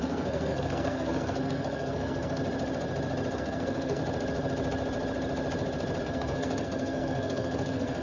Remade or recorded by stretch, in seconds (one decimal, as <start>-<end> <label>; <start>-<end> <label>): 0.0-2.4 remade; 2.4-3.3 recorded; 3.3-4.0 remade; 4.0-6.0 recorded; 6.0-8.0 remade